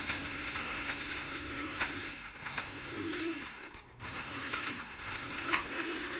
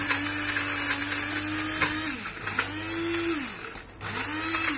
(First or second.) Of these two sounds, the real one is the second